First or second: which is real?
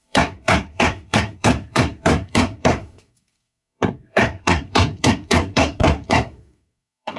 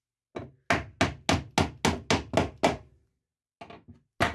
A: second